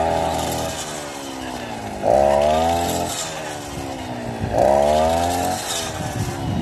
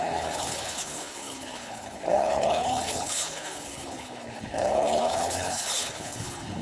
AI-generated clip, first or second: second